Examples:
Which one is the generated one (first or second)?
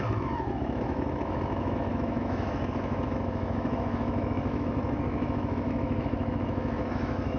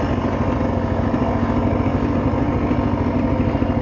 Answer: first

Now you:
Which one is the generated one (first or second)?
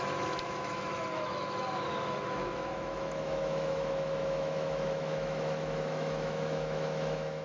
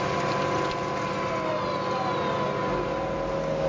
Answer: first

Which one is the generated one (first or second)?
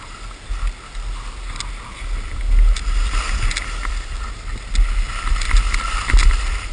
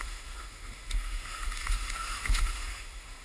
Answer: second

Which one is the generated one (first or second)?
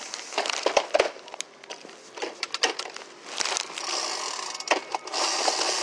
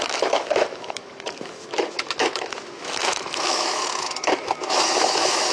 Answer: second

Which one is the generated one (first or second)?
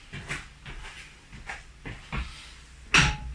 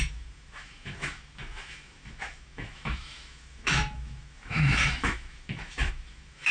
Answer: second